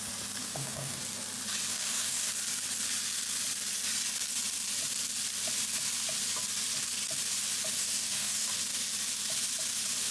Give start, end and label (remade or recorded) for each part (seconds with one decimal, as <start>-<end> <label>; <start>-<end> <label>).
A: 0.0-0.4 recorded; 0.4-1.0 remade; 1.0-1.7 recorded; 1.7-2.3 remade; 2.3-7.8 recorded; 7.8-8.5 remade; 8.5-10.1 recorded